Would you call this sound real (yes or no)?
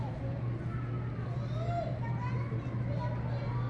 yes